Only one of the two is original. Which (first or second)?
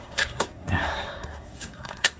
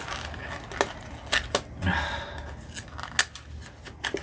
second